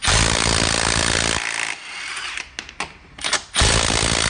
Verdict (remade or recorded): recorded